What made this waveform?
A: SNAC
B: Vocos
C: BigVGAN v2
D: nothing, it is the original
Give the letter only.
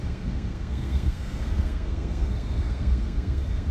A